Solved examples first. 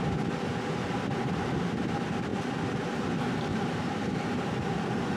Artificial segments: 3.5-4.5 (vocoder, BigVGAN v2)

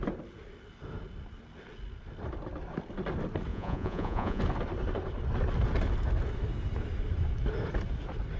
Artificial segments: 3.5-4.4 (vocoder, Vocos)

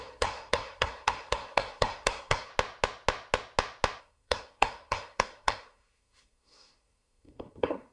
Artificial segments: 0.0-2.5 (codec, SNAC); 4.0-7.9

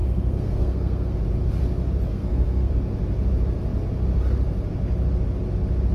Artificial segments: 0.0-1.2 (codec, SNAC); 2.1-2.7

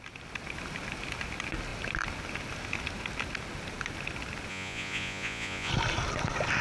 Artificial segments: 4.5-5.7 (vocoder, Vocos)